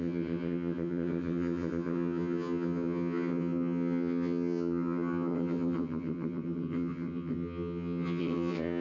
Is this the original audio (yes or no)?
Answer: no